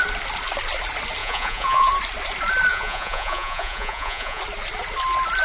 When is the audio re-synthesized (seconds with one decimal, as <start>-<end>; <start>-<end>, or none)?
1.2-1.9; 2.7-4.4